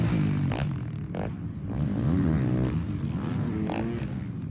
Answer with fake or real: real